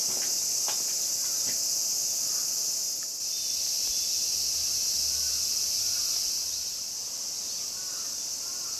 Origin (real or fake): real